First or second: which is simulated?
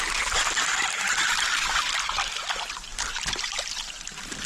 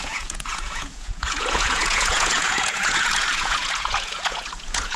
second